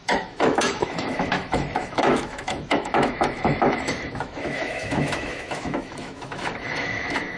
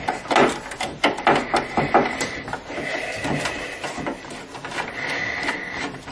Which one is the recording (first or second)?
second